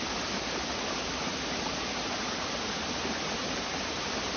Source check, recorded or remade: recorded